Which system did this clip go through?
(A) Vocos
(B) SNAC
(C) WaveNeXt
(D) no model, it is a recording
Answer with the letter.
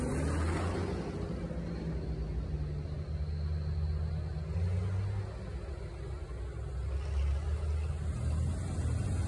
D